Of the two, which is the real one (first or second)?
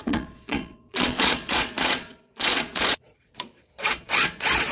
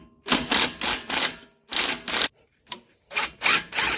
second